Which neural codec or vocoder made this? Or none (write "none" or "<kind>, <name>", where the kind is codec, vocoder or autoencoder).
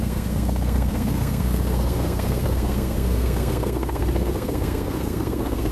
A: codec, SNAC